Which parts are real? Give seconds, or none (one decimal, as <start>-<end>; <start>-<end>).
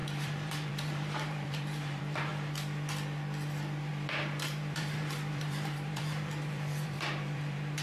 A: 2.3-3.9